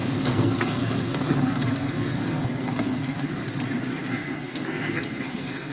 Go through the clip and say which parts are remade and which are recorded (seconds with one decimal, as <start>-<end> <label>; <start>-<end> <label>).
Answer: 0.0-3.4 remade; 3.4-3.9 recorded; 3.9-5.7 remade